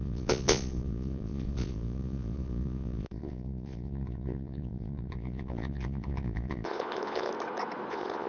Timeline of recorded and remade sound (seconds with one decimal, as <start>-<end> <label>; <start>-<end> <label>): 0.0-7.3 remade; 7.3-7.9 recorded; 7.9-8.3 remade